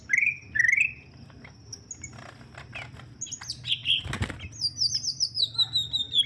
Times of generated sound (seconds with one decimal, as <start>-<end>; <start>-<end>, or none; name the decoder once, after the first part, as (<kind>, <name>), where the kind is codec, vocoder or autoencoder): none